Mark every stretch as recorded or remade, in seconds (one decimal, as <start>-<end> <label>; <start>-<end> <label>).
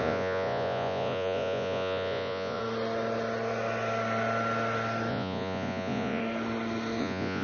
0.0-2.6 remade; 2.6-5.1 recorded; 5.1-6.2 remade; 6.2-7.0 recorded; 7.0-7.4 remade